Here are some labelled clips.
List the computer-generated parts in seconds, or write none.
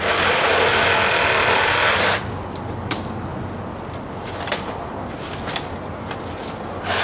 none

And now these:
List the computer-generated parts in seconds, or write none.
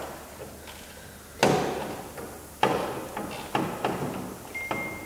none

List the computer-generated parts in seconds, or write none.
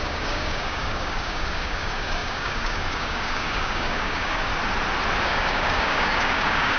0.0-4.5 (codec, DAC); 5.2-6.8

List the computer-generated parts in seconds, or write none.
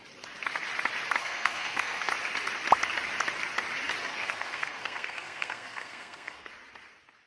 1.2-2.1 (codec, SNAC); 4.1-6.5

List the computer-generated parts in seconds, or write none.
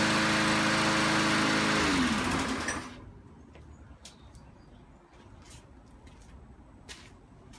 none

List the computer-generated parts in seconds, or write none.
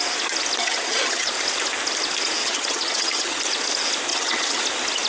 0.6-1.3 (vocoder, HiFi-GAN); 2.4-3.4; 4.1-4.6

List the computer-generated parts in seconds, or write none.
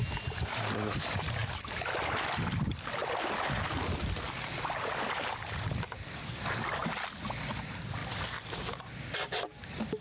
6.8-7.6 (vocoder, BigVGAN v2); 8.0-8.6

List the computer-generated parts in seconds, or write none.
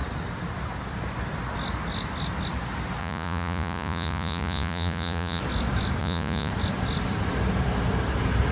3.0-5.4 (vocoder, Vocos); 6.0-6.5